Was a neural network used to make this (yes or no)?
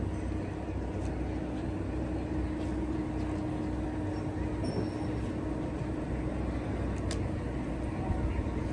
no